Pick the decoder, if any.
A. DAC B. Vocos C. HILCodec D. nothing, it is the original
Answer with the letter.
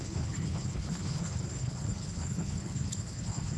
C